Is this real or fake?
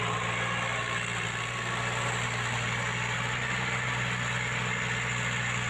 real